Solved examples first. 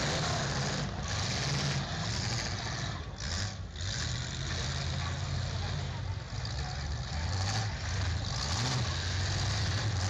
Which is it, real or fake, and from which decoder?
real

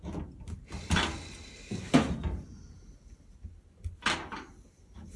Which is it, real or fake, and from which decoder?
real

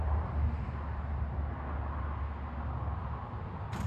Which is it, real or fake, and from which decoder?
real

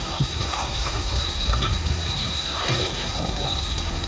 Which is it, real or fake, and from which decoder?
fake, codec, SNAC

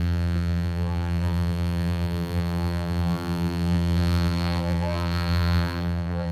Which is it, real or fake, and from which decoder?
fake, vocoder, BigVGAN v2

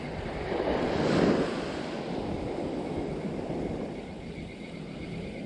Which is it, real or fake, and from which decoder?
real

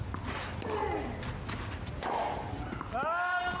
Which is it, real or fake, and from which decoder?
real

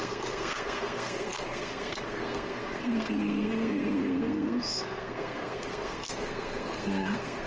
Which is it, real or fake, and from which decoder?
fake, codec, SNAC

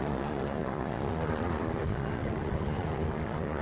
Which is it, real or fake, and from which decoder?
fake, vocoder, Vocos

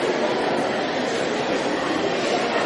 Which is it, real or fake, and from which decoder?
real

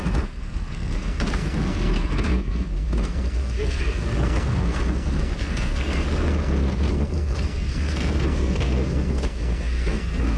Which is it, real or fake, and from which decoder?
fake, codec, SNAC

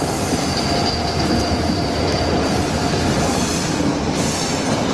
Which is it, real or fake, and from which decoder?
real